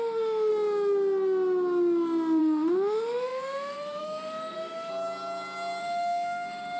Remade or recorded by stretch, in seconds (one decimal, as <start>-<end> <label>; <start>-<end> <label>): 0.0-0.5 remade; 0.5-2.4 recorded; 2.4-4.9 remade; 4.9-5.8 recorded; 5.8-6.8 remade